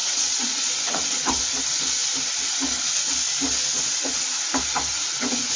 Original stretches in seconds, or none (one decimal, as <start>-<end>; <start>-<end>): 1.4-5.6